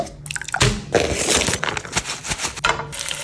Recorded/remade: recorded